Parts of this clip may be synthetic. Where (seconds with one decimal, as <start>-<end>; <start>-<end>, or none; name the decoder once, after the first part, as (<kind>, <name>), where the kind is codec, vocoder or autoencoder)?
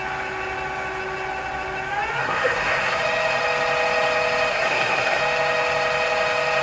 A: 2.2-3.0 (codec, SNAC); 4.5-5.2